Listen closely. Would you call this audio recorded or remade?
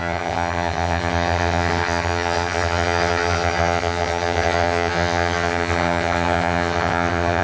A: remade